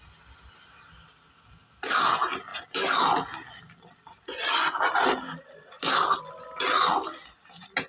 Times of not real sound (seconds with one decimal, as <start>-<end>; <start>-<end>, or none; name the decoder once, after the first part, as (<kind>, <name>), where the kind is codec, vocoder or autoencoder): 2.5-4.5 (vocoder, BigVGAN v2)